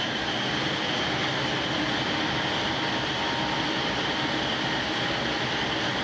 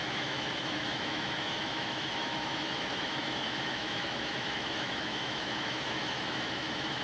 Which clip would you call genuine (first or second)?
first